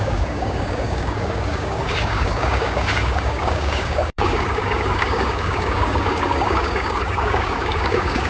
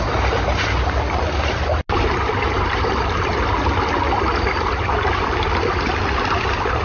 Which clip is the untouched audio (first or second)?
second